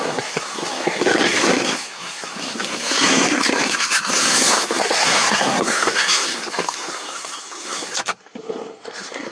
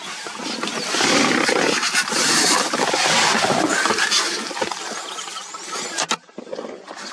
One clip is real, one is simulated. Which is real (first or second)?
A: second